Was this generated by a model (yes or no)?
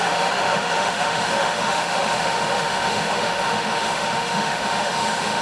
yes